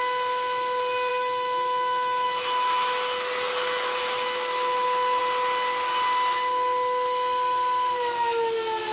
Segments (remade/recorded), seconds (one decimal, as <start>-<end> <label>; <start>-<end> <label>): 0.0-1.1 recorded; 1.1-5.2 remade; 5.2-8.9 recorded